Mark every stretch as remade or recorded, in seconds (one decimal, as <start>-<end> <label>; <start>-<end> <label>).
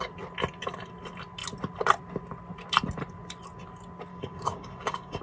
0.0-4.1 recorded; 4.1-5.2 remade